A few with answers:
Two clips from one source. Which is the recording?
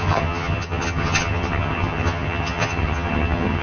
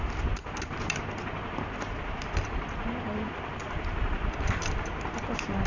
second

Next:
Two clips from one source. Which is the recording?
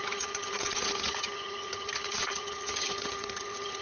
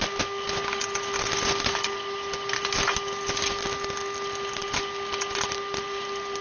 second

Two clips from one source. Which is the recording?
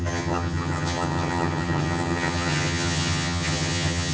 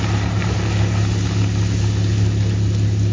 second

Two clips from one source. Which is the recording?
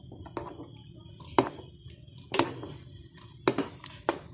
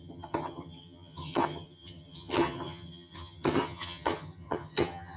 first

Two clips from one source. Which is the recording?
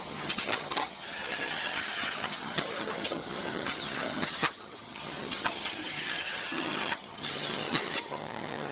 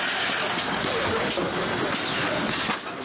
second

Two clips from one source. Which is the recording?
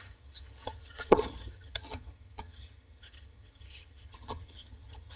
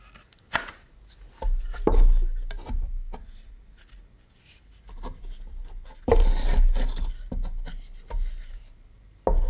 second